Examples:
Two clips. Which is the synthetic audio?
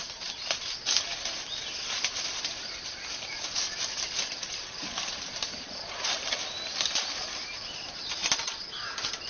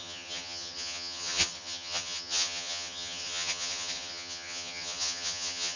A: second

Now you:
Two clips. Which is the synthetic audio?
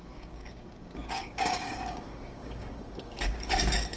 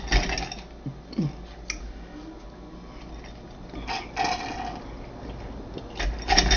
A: first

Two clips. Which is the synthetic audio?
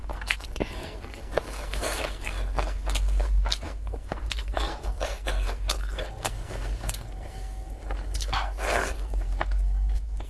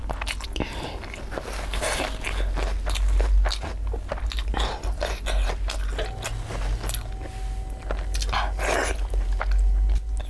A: first